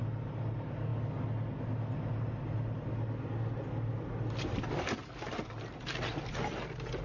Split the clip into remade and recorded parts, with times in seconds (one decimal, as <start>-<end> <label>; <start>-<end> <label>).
0.0-7.0 recorded